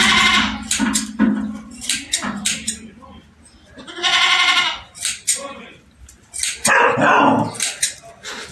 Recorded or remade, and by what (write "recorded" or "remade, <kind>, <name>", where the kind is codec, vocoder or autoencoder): recorded